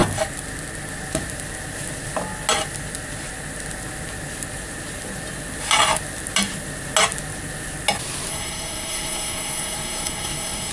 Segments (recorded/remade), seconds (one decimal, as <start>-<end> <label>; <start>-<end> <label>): 0.0-8.3 recorded; 8.3-10.7 remade